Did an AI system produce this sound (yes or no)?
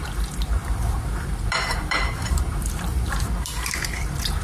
yes